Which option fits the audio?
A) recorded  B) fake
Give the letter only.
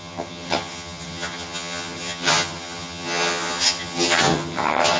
B